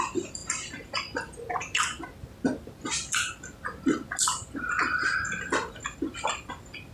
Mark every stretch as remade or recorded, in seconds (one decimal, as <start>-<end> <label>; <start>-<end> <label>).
0.0-6.9 recorded